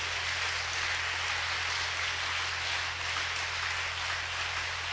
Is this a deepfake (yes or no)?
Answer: no